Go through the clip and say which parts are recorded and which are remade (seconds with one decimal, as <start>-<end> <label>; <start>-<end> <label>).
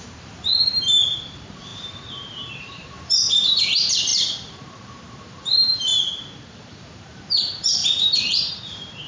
0.0-4.1 remade; 4.1-4.7 recorded; 4.7-9.1 remade